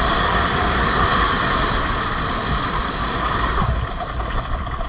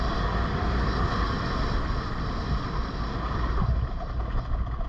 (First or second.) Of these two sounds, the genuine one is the second